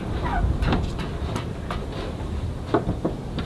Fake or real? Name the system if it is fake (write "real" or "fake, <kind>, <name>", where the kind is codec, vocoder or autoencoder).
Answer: real